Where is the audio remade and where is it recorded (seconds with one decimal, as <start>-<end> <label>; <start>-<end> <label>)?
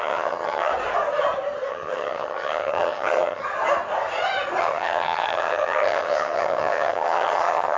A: 0.0-0.7 remade; 0.7-1.7 recorded; 1.7-3.4 remade; 3.4-4.6 recorded; 4.6-7.8 remade